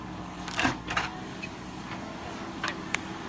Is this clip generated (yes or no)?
yes